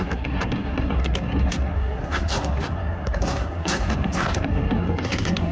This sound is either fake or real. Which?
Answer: fake